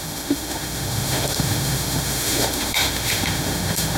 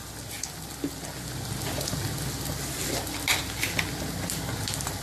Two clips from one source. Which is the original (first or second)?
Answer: second